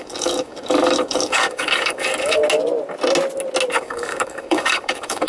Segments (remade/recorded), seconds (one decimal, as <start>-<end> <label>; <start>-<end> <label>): 0.0-2.4 remade; 2.4-3.7 recorded; 3.7-5.3 remade